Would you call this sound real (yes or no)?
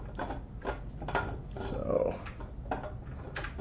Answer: yes